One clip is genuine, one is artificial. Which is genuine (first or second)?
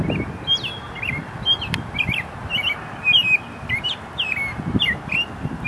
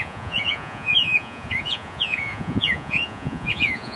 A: first